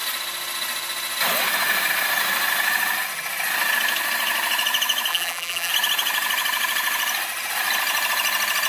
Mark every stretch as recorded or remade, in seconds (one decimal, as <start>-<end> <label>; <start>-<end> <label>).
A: 0.0-5.1 recorded; 5.1-5.7 remade; 5.7-8.7 recorded